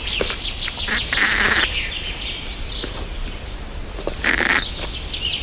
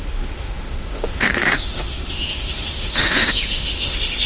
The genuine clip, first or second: first